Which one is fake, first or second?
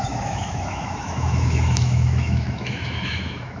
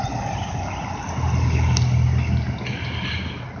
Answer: first